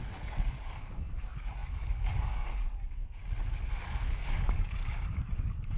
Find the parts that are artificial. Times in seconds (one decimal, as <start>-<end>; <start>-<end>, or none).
0.0-3.0; 3.8-5.8